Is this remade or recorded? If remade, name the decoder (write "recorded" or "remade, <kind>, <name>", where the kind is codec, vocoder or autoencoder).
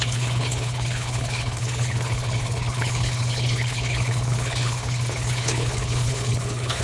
remade, codec, HILCodec